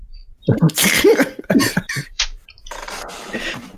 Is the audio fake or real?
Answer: fake